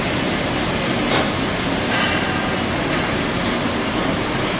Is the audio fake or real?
real